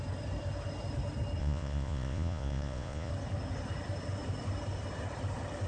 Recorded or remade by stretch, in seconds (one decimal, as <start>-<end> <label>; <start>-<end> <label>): 0.0-1.4 recorded; 1.4-3.1 remade; 3.1-5.7 recorded